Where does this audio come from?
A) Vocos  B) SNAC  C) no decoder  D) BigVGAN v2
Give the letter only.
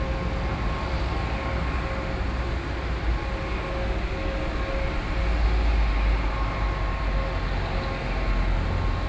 C